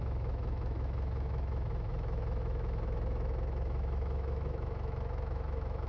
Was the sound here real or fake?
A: fake